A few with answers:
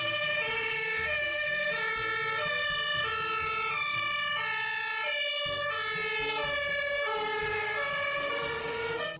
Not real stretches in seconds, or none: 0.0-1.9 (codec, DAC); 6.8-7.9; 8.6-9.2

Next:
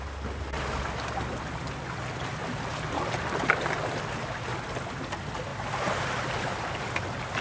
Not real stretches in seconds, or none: none

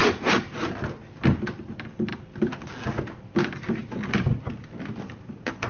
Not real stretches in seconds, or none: none

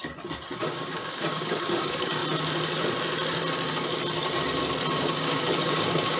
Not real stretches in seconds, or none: 0.6-2.2 (codec, DAC); 5.0-6.2

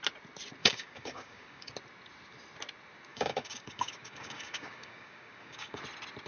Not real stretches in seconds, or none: 0.6-1.7 (codec, DAC); 3.1-5.8

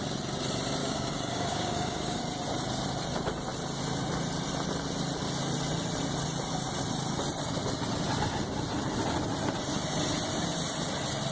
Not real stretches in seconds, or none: 0.8-2.2 (codec, DAC)

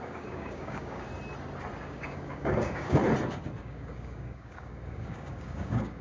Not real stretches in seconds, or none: 0.0-1.1 (codec, DAC); 1.8-3.0; 3.6-6.0